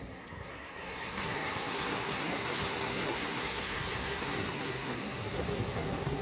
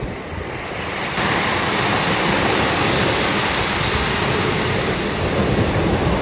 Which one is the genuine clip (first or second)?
second